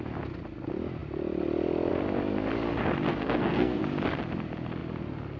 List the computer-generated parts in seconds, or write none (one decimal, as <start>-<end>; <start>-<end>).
3.1-3.8